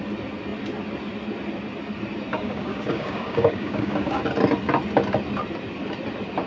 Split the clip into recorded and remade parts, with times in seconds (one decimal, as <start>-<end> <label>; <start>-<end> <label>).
0.0-2.3 recorded; 2.3-4.2 remade; 4.2-6.5 recorded